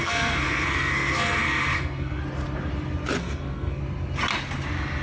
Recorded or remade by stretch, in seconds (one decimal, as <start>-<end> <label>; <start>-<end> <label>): 0.0-2.2 remade; 2.2-3.2 recorded; 3.2-3.8 remade; 3.8-5.0 recorded

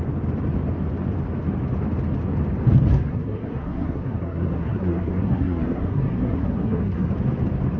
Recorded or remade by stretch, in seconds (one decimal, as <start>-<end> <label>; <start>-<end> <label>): 0.0-2.9 recorded; 2.9-7.1 remade; 7.1-7.8 recorded

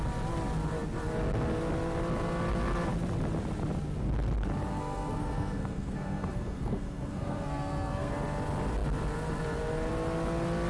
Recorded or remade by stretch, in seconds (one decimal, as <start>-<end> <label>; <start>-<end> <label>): 0.0-4.7 recorded; 4.7-8.1 remade; 8.1-10.7 recorded

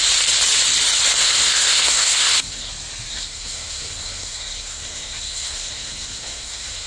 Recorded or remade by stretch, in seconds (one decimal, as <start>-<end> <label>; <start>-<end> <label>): 0.0-1.2 recorded; 1.2-2.7 remade; 2.7-3.1 recorded; 3.1-6.9 remade

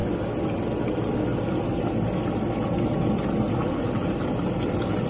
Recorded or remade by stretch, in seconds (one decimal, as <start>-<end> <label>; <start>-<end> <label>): 0.0-5.1 recorded

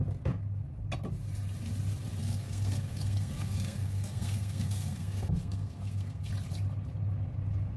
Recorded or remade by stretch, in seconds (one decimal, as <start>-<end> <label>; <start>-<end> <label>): 0.0-2.2 recorded; 2.2-6.3 remade; 6.3-7.8 recorded

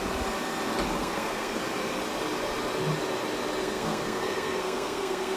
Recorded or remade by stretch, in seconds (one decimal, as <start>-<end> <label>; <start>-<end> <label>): 0.0-1.0 recorded; 1.0-1.6 remade; 1.6-3.6 recorded; 3.6-5.4 remade